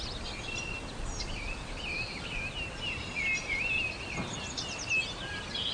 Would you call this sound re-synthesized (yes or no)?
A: no